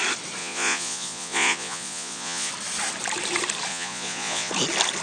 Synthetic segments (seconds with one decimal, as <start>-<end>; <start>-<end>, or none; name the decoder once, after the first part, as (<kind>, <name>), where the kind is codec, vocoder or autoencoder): 0.4-2.5 (vocoder, Vocos); 3.7-4.5